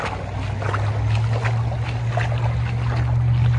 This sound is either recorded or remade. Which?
recorded